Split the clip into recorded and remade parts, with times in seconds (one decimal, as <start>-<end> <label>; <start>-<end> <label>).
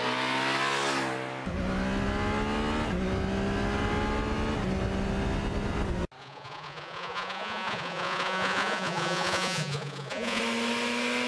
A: 0.0-6.2 recorded; 6.2-10.4 remade; 10.4-11.3 recorded